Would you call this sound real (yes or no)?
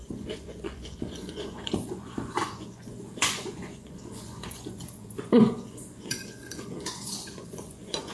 no